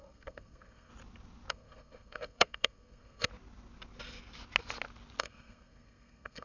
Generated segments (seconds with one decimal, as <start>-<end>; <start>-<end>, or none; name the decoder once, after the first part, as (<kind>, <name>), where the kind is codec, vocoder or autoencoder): 0.0-0.9 (codec, SNAC); 1.5-3.3; 5.2-6.4